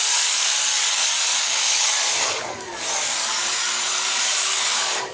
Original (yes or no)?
no